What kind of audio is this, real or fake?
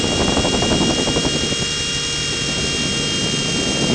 real